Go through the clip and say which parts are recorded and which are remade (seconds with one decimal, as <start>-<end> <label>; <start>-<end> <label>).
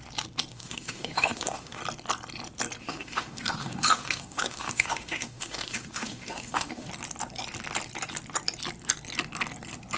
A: 0.0-0.5 recorded; 0.5-1.8 remade; 1.8-2.8 recorded; 2.8-6.9 remade; 6.9-10.0 recorded